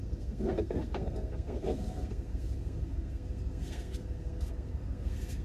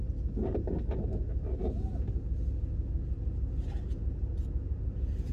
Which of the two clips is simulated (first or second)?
first